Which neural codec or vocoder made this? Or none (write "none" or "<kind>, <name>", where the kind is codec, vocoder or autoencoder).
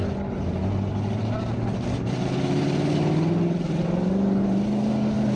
none